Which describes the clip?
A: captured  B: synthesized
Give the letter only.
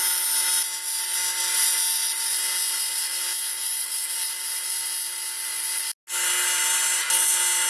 A